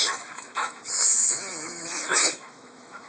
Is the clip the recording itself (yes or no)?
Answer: no